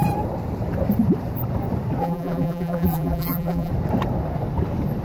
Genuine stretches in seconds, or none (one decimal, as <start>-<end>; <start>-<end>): 0.0-2.0; 3.7-5.0